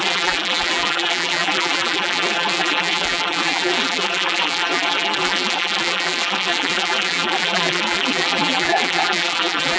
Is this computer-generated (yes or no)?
yes